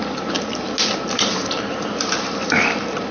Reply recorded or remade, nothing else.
recorded